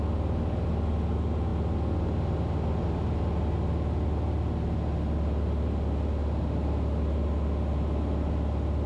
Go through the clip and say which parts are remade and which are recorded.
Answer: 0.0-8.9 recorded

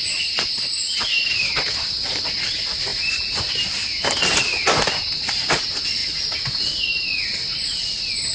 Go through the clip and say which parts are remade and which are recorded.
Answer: 0.0-8.3 recorded

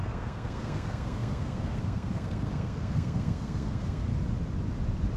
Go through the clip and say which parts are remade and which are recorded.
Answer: 0.0-4.1 remade; 4.1-5.2 recorded

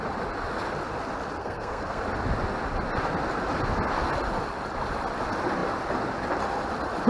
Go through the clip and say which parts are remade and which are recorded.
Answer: 0.0-1.4 recorded; 1.4-2.0 remade; 2.0-7.1 recorded

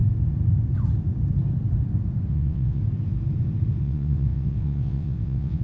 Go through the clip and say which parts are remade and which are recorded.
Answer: 0.0-2.3 recorded; 2.3-2.8 remade; 2.8-3.8 recorded; 3.8-5.6 remade

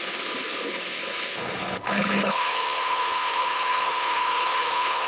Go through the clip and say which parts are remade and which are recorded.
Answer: 0.0-5.1 remade

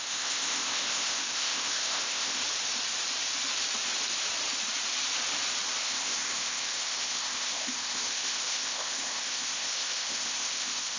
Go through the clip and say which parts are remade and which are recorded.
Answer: 0.0-2.4 remade; 2.4-5.8 recorded; 5.8-11.0 remade

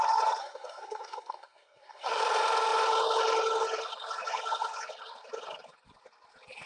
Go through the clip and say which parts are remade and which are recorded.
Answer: 0.0-0.4 recorded; 0.4-2.2 remade; 2.2-6.7 recorded